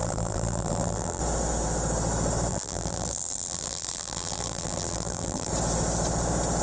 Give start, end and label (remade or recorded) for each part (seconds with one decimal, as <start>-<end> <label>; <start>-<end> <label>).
0.0-1.2 remade; 1.2-2.5 recorded; 2.5-5.5 remade; 5.5-6.6 recorded